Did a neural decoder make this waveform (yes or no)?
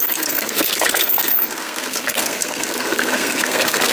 yes